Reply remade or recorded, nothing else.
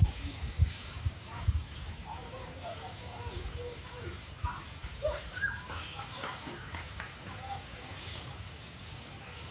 remade